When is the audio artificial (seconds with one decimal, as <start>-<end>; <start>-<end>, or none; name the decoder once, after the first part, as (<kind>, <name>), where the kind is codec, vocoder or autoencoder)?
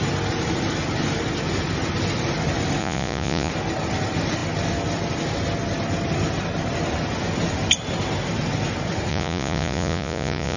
2.8-3.5 (vocoder, Vocos); 9.1-10.6